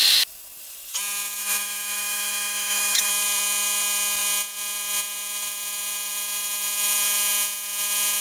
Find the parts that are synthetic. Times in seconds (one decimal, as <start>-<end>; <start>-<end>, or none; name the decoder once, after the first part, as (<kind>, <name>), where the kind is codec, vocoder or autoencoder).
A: 1.4-3.1 (autoencoder, DAC-VAE)